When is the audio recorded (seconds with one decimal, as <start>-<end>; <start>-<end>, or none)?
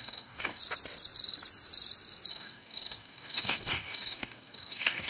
0.6-2.3